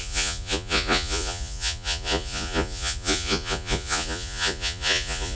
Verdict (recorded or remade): remade